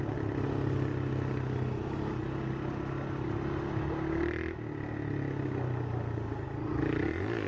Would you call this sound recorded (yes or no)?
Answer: yes